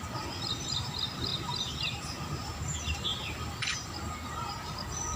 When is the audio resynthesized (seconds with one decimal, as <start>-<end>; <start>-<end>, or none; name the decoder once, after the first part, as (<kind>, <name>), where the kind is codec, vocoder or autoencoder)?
1.3-2.0 (vocoder, BigVGAN v2)